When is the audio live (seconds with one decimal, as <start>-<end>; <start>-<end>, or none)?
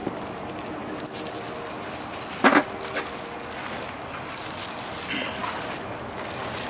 0.0-6.7